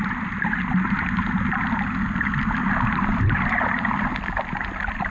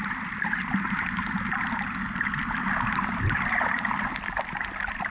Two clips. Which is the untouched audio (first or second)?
first